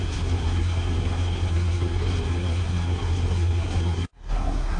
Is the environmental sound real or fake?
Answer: fake